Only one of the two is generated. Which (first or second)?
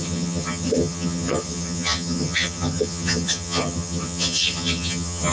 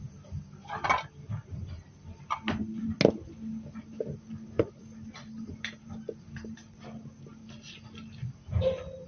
first